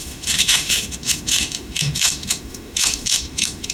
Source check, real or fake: fake